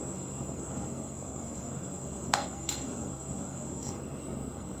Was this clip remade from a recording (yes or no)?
yes